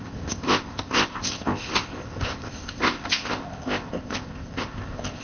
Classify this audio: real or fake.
fake